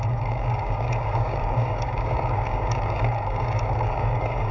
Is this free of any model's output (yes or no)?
no